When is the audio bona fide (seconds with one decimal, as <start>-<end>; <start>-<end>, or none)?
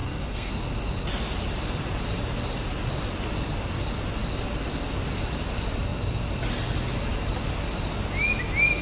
0.5-8.8